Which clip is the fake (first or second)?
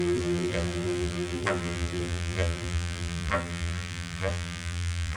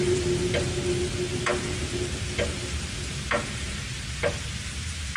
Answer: first